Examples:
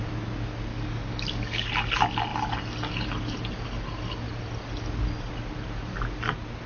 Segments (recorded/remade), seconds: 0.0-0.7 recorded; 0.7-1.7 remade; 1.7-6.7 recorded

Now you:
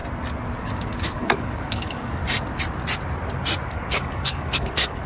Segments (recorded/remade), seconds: 0.0-0.6 recorded; 0.6-2.2 remade; 2.2-3.7 recorded; 3.7-5.1 remade

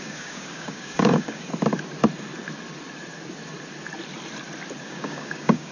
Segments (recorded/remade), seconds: 0.0-1.4 remade; 1.4-4.8 recorded; 4.8-5.7 remade

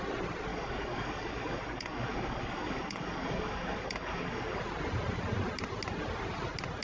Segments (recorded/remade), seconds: 0.0-0.5 recorded; 0.5-4.6 remade; 4.6-6.8 recorded

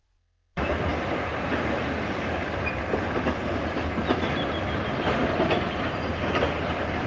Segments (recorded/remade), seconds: 0.0-7.1 recorded

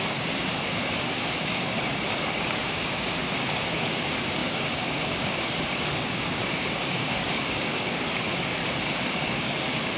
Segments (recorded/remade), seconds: 0.0-8.6 remade; 8.6-9.1 recorded; 9.1-10.0 remade